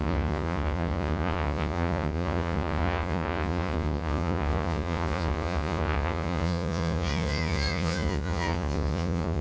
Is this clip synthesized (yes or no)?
yes